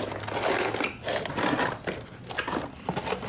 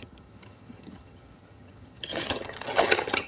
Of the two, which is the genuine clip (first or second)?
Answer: first